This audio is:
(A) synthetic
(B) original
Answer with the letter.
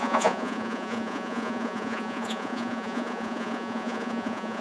A